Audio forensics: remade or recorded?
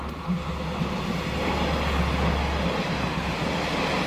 recorded